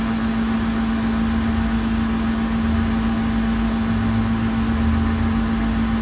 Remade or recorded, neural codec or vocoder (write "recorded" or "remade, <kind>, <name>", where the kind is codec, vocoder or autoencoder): recorded